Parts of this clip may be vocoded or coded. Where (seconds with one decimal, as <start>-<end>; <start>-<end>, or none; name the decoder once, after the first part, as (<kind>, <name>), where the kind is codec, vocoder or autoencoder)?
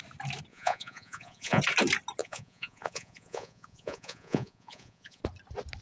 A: 0.5-1.6 (vocoder, Vocos); 2.2-5.2